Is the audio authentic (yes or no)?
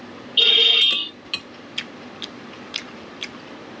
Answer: yes